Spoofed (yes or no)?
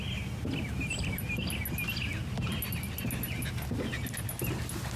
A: no